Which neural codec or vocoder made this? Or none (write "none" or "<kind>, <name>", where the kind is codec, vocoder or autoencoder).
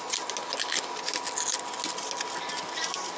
none